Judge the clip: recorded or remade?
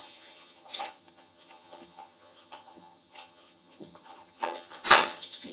remade